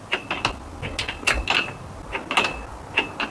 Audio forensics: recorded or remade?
recorded